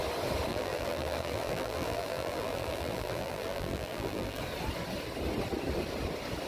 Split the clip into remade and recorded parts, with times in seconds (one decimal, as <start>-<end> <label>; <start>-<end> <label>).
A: 0.0-0.5 recorded; 0.5-4.4 remade; 4.4-6.5 recorded